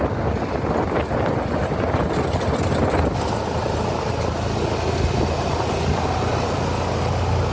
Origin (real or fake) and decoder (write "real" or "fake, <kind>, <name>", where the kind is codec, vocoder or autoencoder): real